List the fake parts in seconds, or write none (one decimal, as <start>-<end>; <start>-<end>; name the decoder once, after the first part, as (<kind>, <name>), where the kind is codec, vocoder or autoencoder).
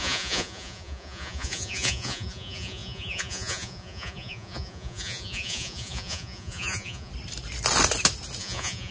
0.0-7.1 (vocoder, Vocos); 8.4-8.9